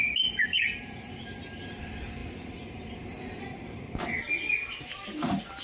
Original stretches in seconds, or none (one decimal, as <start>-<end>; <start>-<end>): 0.0-5.6